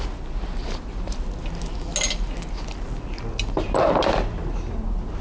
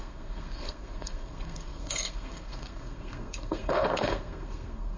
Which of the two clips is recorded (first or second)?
first